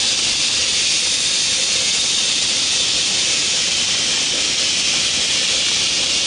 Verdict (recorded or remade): recorded